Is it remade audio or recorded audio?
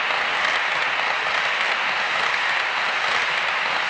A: recorded